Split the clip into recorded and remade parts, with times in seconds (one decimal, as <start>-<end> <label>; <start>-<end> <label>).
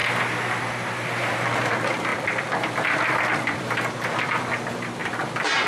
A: 0.0-2.1 recorded; 2.1-4.5 remade; 4.5-5.0 recorded; 5.0-5.7 remade